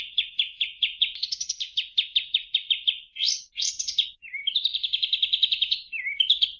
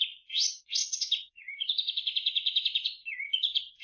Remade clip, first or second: second